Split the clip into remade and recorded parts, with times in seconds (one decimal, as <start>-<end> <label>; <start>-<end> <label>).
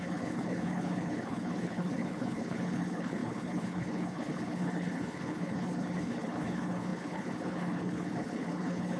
0.0-9.0 remade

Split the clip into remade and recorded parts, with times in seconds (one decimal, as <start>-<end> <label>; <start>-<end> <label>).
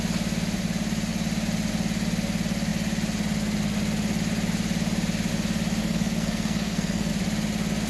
0.0-5.8 recorded; 5.8-7.1 remade; 7.1-7.9 recorded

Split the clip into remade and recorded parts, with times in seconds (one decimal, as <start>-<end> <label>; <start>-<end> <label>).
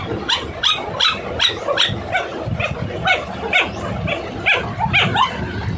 0.0-5.8 recorded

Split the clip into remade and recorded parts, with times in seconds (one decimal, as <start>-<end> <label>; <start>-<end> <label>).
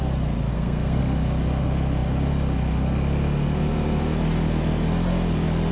0.0-0.5 recorded; 0.5-1.0 remade; 1.0-5.7 recorded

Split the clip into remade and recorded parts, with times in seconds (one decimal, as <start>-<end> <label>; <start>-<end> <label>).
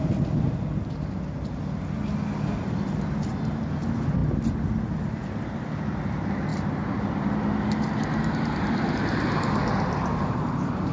0.0-10.9 recorded